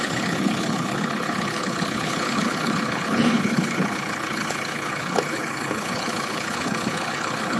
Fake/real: fake